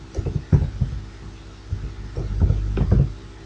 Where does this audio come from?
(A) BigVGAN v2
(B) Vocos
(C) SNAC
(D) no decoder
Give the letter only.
D